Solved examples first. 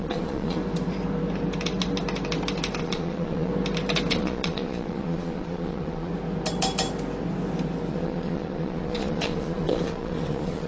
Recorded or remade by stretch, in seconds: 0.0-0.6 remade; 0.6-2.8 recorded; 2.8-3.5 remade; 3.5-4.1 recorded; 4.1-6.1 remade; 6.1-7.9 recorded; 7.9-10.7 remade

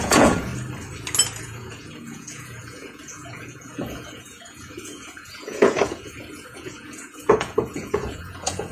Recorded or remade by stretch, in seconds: 0.0-0.5 remade; 0.5-1.4 recorded; 1.4-8.7 remade

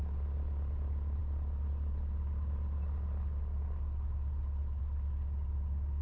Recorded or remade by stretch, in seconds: 0.0-6.0 recorded

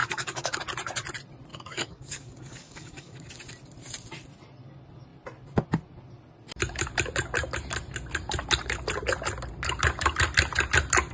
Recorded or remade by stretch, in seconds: 0.0-0.6 remade; 0.6-1.5 recorded; 1.5-3.3 remade; 3.3-11.1 recorded

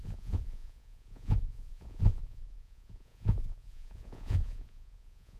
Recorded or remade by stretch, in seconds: 0.0-5.4 remade

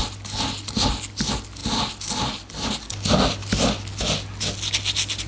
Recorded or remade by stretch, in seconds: 0.0-5.3 recorded

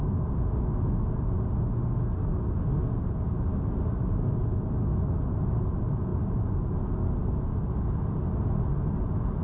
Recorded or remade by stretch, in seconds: 0.0-9.4 recorded

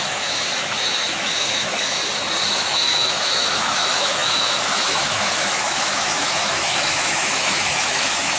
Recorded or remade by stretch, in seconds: 0.0-2.0 remade; 2.0-2.5 recorded; 2.5-8.4 remade